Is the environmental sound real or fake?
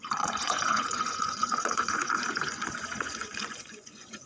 fake